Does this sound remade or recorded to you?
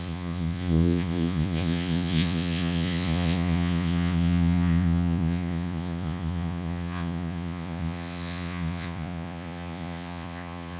remade